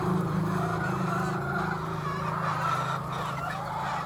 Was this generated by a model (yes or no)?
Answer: no